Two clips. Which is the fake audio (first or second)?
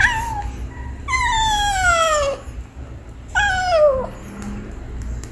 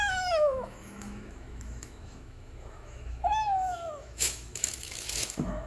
second